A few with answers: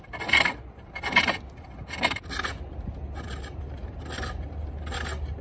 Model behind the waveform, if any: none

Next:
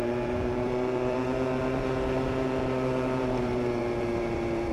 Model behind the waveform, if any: vocoder, BigVGAN v2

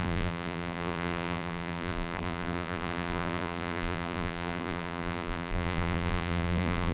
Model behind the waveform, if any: vocoder, BigVGAN v2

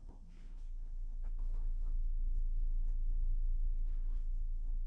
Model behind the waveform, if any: codec, SNAC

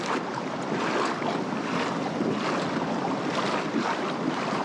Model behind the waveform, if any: none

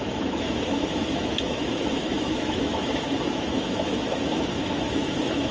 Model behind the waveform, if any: autoencoder, DAC-VAE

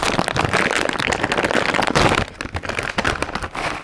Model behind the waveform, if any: none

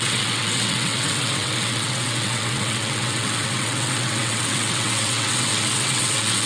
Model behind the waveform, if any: vocoder, WaveNeXt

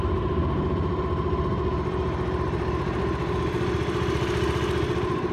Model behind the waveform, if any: none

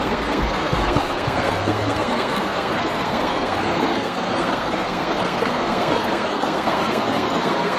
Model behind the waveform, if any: codec, SNAC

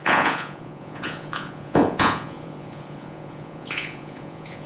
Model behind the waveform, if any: vocoder, Vocos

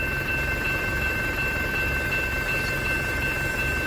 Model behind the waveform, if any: none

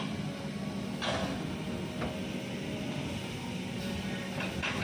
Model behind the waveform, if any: none